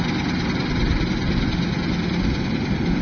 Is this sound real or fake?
real